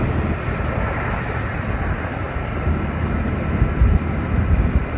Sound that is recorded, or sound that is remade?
recorded